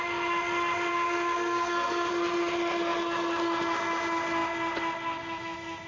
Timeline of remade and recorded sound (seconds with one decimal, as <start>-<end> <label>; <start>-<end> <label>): 0.0-0.9 recorded; 0.9-2.1 remade; 2.1-5.9 recorded